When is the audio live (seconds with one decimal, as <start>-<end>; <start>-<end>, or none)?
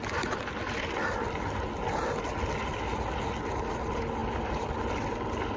0.0-5.6